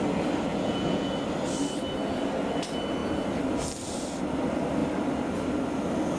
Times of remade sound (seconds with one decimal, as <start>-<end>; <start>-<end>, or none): 0.5-1.1